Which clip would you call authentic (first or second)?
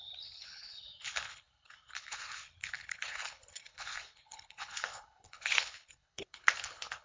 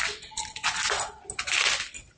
second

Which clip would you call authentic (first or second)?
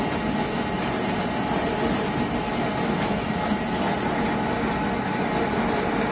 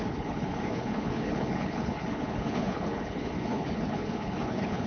first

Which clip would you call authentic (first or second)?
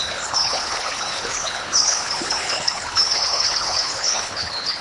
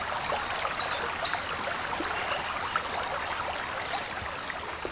second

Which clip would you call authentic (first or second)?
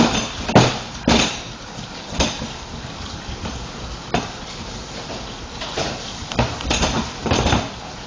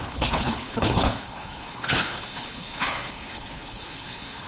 first